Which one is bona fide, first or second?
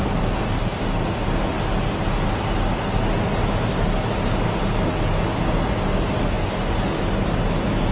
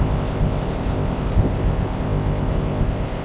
first